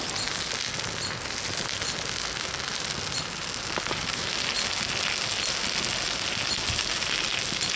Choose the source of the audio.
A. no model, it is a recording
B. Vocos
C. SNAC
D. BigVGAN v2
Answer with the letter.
A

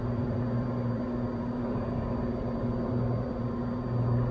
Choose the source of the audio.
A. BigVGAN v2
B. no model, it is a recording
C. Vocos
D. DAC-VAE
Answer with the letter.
A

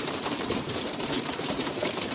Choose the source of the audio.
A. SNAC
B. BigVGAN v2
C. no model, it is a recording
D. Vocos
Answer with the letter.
B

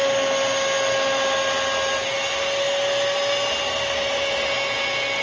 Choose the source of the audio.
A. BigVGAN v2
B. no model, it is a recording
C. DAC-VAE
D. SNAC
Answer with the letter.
B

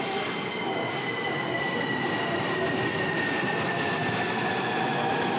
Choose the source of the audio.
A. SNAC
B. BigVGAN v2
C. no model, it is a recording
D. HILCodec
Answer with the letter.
C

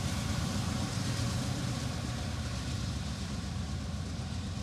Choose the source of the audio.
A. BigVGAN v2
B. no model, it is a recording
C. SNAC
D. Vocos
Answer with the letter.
A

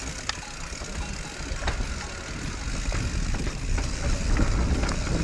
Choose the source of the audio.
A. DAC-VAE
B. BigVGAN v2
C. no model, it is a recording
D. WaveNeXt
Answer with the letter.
C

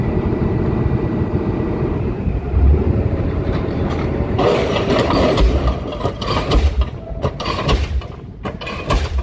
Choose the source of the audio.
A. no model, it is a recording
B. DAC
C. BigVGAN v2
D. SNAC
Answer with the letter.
C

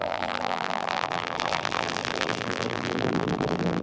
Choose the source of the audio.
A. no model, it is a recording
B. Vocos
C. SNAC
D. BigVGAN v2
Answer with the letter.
D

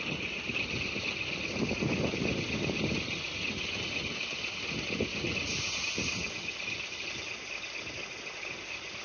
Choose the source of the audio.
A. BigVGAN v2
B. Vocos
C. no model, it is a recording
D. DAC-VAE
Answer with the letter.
C